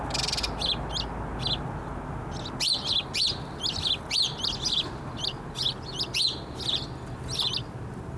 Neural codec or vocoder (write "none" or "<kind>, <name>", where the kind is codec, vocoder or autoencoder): none